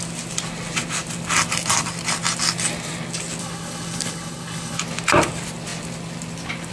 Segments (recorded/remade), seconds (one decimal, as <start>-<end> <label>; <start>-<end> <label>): 0.0-3.4 recorded; 3.4-4.8 remade; 4.8-6.7 recorded